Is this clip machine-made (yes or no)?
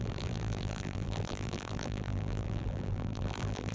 yes